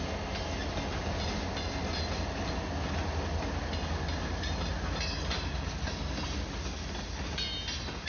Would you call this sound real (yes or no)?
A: yes